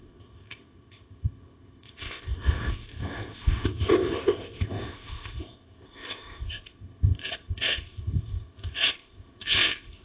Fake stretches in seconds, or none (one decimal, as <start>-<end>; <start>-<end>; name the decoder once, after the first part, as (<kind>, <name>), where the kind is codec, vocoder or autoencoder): 0.0-10.0 (codec, ZipCodec)